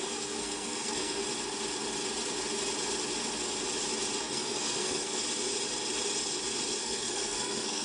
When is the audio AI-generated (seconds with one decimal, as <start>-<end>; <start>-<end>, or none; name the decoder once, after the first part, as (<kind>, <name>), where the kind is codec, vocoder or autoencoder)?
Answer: 0.0-1.2 (codec, SNAC); 4.2-5.2; 6.8-7.8